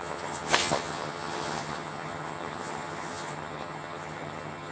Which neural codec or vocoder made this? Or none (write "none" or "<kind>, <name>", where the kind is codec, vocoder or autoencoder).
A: vocoder, HiFi-GAN